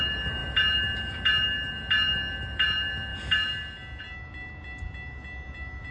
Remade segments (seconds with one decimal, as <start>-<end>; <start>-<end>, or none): none